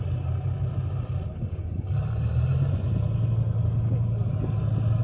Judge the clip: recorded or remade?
recorded